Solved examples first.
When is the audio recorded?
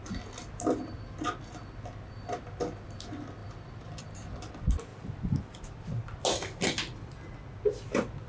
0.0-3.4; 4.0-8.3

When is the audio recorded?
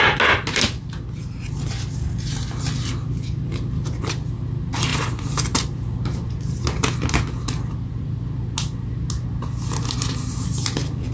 0.0-11.1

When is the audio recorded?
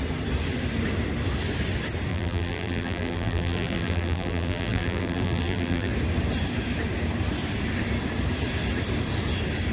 0.0-2.1; 5.9-9.7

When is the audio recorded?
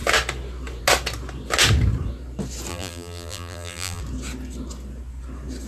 0.0-2.7; 4.0-5.7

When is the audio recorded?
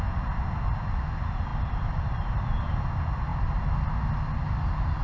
0.0-1.5; 2.6-5.0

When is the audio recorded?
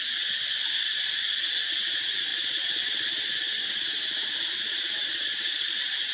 0.0-2.3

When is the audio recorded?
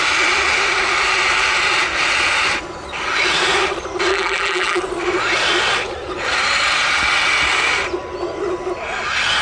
0.0-4.1; 4.8-9.4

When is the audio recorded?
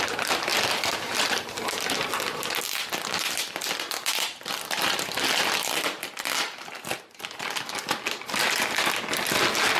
0.0-9.8